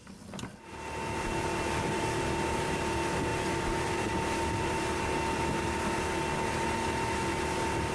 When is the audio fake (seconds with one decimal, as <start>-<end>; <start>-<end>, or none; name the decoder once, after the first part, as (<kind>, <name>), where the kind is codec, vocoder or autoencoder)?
none